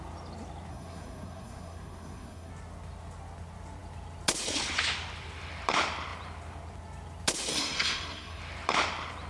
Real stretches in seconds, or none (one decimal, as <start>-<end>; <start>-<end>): 0.0-0.7; 2.5-7.5; 8.4-9.3